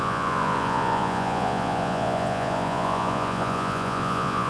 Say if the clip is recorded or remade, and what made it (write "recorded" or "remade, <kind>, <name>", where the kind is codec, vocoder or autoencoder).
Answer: remade, vocoder, Vocos